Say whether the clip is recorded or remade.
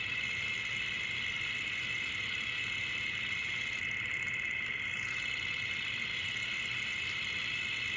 recorded